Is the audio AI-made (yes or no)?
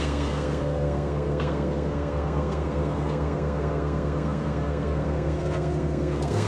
yes